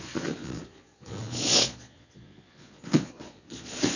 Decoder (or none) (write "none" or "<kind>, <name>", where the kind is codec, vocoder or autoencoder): vocoder, Vocos